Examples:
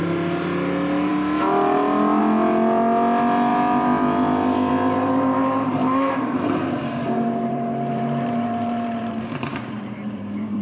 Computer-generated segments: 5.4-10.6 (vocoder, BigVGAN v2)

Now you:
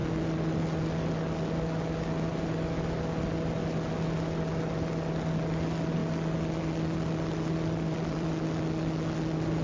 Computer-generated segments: 6.0-8.6 (vocoder, BigVGAN v2)

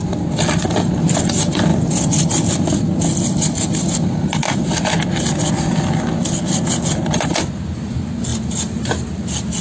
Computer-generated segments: none

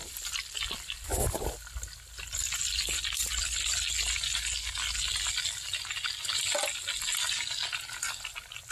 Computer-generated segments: 0.0-3.6 (vocoder, BigVGAN v2)

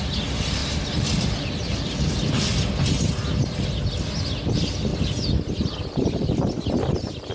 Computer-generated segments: 0.6-2.8 (vocoder, BigVGAN v2)

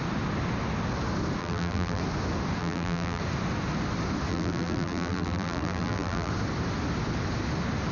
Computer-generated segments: 1.4-2.0 (vocoder, BigVGAN v2); 2.6-3.2; 4.3-6.3

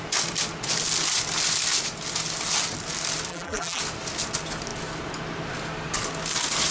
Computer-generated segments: 3.3-3.8 (vocoder, BigVGAN v2)

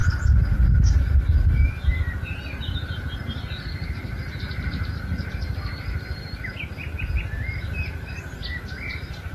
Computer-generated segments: none